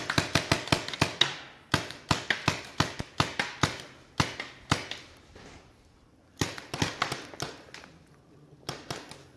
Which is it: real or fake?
real